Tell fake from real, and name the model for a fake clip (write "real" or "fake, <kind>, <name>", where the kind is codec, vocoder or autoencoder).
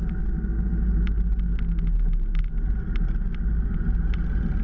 real